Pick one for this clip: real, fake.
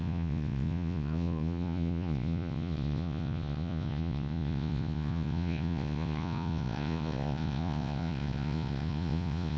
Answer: fake